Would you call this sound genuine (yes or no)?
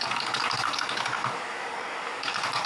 no